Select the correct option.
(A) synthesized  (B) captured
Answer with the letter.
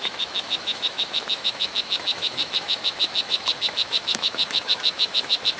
A